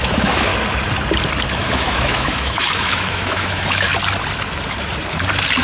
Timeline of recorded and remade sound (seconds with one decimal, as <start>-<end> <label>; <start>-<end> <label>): 0.0-0.5 remade; 0.5-1.6 recorded; 1.6-3.9 remade; 3.9-5.6 recorded